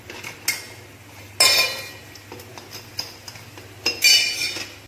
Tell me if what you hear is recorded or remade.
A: recorded